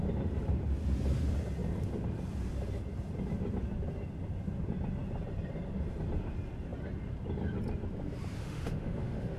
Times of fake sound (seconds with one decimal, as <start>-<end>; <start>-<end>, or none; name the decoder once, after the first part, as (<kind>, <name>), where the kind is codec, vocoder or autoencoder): 8.4-9.4 (autoencoder, DAC-VAE)